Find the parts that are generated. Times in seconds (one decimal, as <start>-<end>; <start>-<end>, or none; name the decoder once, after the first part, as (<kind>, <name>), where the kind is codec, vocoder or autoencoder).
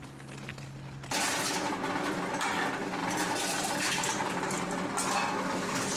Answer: 3.0-4.6 (vocoder, BigVGAN v2)